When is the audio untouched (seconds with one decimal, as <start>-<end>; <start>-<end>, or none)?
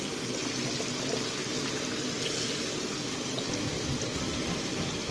0.0-4.3